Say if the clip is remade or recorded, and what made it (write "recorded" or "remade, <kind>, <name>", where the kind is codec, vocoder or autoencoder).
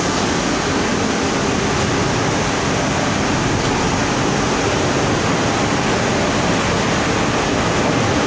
recorded